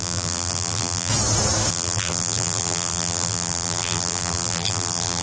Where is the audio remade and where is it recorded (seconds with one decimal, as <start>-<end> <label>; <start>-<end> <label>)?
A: 0.0-1.1 remade; 1.1-1.7 recorded; 1.7-5.2 remade